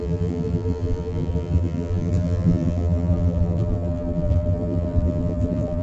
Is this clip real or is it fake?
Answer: fake